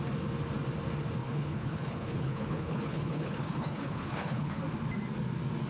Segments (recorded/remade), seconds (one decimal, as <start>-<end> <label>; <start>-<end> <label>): 0.0-1.2 recorded; 1.2-4.6 remade; 4.6-5.7 recorded

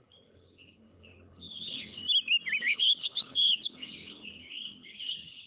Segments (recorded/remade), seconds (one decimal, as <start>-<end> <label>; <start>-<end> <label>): 0.0-2.0 remade; 2.0-2.6 recorded; 2.6-5.5 remade

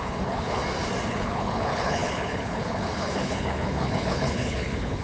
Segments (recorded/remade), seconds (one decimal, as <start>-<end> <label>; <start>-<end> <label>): 0.0-0.6 remade; 0.6-1.1 recorded; 1.1-5.0 remade